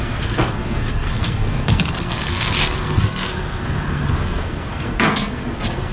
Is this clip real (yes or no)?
no